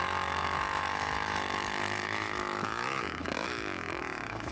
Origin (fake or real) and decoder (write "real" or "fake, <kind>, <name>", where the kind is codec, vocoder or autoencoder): fake, autoencoder, DAC-VAE